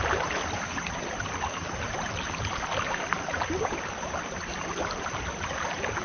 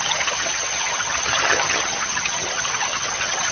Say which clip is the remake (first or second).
second